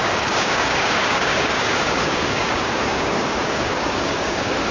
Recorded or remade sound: remade